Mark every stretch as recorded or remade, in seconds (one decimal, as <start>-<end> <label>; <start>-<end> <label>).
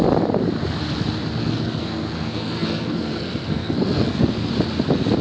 0.0-1.4 recorded; 1.4-4.5 remade; 4.5-5.2 recorded